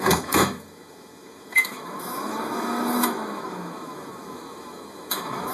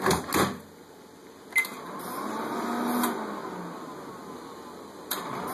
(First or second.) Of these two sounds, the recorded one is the second